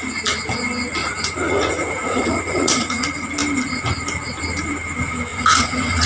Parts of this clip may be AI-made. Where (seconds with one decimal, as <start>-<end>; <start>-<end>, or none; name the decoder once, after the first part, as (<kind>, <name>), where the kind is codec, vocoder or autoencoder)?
1.0-3.0 (vocoder, Vocos); 5.3-6.1